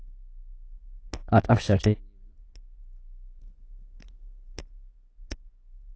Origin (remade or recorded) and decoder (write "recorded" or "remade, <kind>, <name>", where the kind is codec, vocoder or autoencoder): recorded